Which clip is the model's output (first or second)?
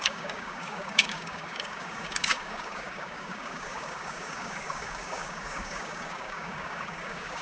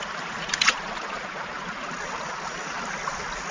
first